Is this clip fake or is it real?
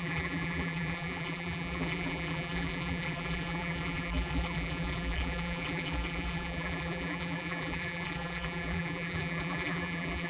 fake